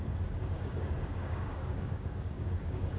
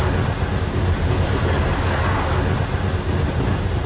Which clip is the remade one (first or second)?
first